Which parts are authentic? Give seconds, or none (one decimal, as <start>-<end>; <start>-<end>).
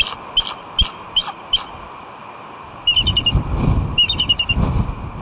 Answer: 0.0-5.2